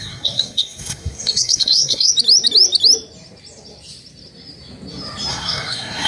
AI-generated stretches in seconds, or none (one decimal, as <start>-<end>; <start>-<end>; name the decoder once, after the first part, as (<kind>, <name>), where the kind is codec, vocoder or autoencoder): 0.0-2.1 (codec, SNAC); 5.3-6.1